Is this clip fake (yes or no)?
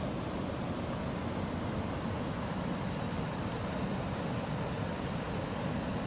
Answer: no